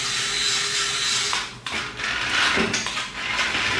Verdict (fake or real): real